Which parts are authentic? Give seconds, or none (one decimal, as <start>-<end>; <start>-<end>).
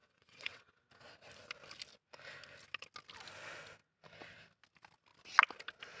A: 0.8-6.0